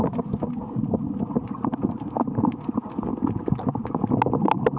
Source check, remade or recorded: recorded